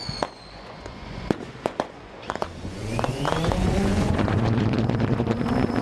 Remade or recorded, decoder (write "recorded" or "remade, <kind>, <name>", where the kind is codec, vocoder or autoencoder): remade, vocoder, Vocos